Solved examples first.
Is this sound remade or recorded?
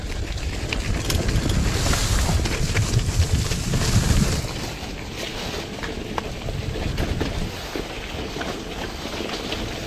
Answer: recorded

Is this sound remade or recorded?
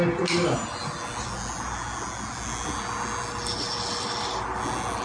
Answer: recorded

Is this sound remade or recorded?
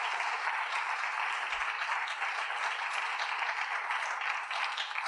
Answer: recorded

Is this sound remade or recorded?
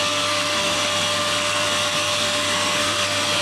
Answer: remade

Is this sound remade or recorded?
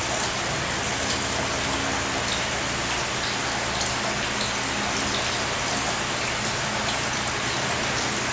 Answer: recorded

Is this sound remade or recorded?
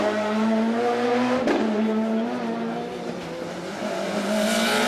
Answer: recorded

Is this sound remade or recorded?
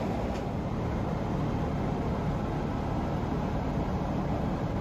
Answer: recorded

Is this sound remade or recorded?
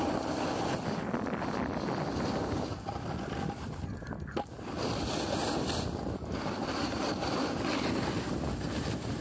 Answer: recorded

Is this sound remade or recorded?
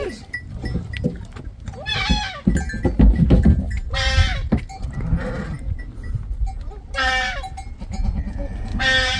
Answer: recorded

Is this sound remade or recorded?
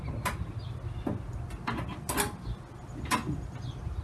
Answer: recorded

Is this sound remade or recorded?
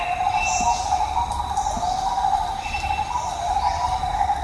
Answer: recorded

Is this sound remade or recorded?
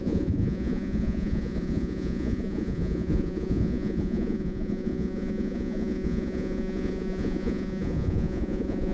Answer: remade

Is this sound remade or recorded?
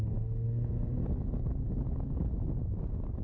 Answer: recorded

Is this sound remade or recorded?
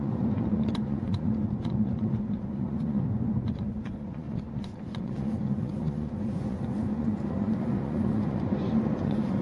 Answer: remade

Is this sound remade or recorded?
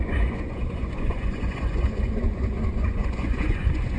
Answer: remade